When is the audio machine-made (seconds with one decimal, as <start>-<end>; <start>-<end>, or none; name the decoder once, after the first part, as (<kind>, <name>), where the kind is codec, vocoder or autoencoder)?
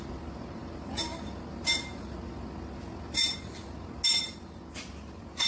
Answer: none